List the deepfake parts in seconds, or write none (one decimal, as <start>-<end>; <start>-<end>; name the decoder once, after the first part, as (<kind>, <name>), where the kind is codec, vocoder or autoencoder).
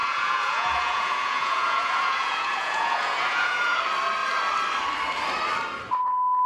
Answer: 0.0-3.8 (vocoder, Vocos)